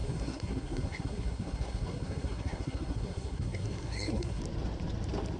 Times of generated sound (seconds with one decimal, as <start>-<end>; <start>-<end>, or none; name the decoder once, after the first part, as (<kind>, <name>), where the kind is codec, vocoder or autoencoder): 0.0-4.4 (codec, SNAC)